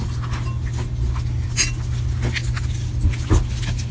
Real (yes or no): yes